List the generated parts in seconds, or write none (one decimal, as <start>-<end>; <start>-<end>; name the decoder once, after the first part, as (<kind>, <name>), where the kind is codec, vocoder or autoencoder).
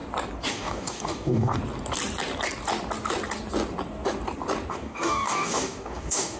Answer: 0.5-1.6 (codec, DAC); 4.7-6.4